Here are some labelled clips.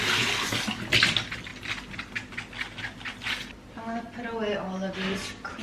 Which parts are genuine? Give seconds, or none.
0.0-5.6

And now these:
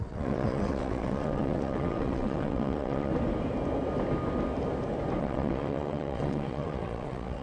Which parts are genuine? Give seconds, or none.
3.1-5.2

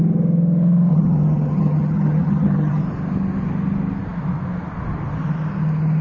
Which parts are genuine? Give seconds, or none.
0.0-0.9; 2.8-6.0

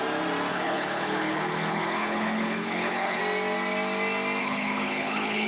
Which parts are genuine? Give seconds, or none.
0.0-0.5; 3.2-4.4

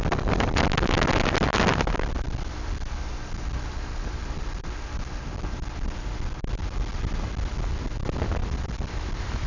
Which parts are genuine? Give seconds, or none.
0.0-8.4